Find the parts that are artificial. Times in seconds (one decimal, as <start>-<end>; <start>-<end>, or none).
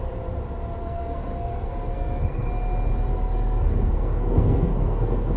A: 0.8-2.5; 3.1-5.4